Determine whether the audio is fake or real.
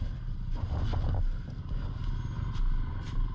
real